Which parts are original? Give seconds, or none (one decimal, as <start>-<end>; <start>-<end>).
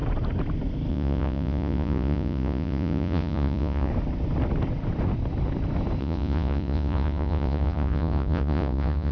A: 0.0-0.9; 3.9-6.0